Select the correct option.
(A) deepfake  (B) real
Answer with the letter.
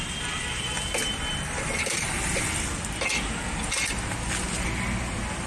B